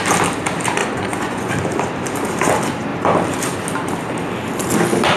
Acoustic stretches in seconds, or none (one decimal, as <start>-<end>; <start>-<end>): 0.0-0.8; 1.5-5.2